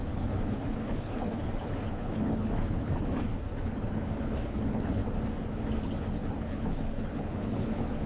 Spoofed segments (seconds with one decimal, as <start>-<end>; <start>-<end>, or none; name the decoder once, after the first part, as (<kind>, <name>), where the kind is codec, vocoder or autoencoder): 0.0-5.0 (codec, HILCodec); 6.1-8.1